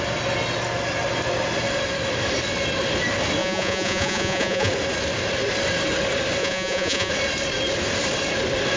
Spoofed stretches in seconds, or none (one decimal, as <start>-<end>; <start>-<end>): 3.4-4.7; 6.4-7.1